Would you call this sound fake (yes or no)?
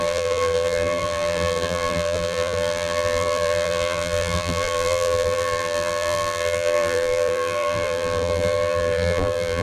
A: yes